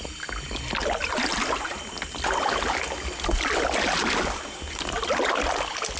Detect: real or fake real